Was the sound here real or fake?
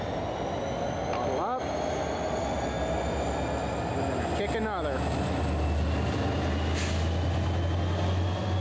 real